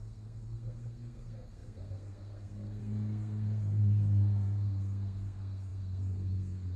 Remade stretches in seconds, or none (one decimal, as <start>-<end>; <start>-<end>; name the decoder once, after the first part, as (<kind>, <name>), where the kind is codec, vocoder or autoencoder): 0.0-6.8 (codec, SNAC)